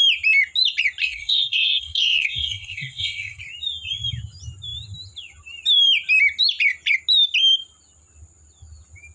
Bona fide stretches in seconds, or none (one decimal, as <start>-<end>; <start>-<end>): 0.0-1.0; 3.4-9.1